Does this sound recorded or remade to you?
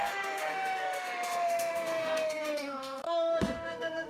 remade